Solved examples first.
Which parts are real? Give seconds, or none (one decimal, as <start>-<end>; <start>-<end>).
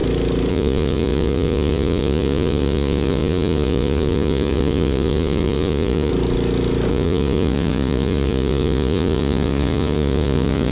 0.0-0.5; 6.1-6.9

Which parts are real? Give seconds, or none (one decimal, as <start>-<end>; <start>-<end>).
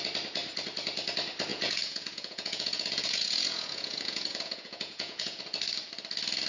0.0-1.5; 5.4-6.5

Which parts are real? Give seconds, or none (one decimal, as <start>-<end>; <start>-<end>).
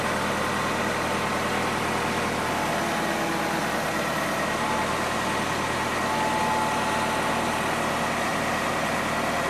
0.0-8.3; 9.0-9.5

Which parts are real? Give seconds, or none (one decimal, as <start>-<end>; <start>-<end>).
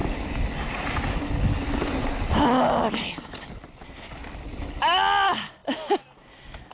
0.0-6.7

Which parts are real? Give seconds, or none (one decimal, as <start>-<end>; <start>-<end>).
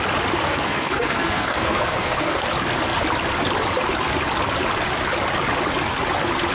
0.0-0.4; 2.4-6.5